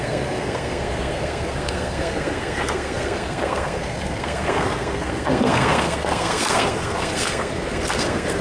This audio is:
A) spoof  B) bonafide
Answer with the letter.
A